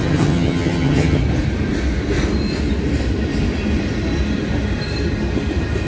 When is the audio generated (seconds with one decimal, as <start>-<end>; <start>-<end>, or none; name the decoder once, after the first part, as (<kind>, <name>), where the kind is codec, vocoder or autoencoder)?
0.0-1.2 (vocoder, HiFi-GAN)